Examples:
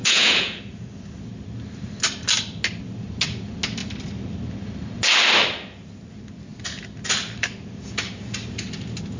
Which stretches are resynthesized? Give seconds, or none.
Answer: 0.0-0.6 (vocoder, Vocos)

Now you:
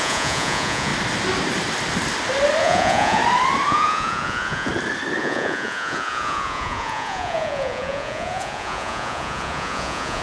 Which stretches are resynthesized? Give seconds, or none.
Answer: 0.0-0.9 (vocoder, Vocos); 2.6-3.2; 3.7-4.7; 5.2-10.2

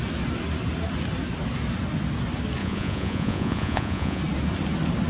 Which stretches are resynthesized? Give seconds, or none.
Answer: 2.6-4.2 (vocoder, Vocos)

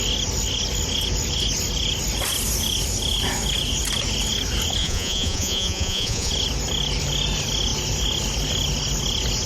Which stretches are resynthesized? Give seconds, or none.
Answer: 4.8-6.3 (vocoder, Vocos)

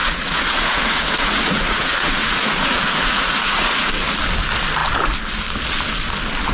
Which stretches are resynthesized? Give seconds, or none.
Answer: 0.0-3.9 (vocoder, Vocos)

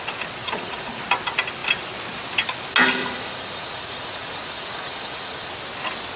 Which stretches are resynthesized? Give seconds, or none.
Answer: 0.4-1.0 (vocoder, Vocos); 3.0-5.5

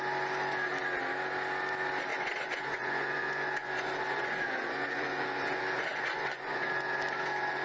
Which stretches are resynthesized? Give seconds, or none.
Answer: 2.1-6.7 (vocoder, Vocos)

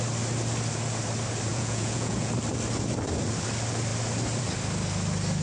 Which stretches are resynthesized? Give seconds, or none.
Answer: 1.5-2.3 (vocoder, Vocos)